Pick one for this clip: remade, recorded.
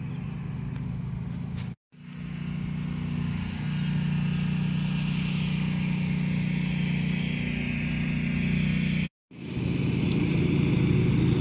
recorded